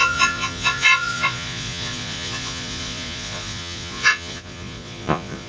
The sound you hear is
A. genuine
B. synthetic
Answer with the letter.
B